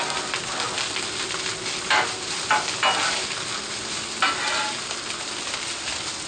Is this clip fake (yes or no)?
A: no